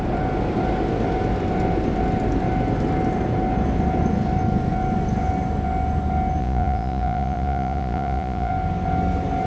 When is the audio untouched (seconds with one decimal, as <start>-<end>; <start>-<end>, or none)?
0.0-6.4; 8.5-9.5